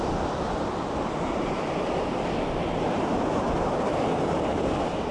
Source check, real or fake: real